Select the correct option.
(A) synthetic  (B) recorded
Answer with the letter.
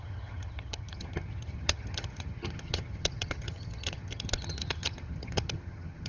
A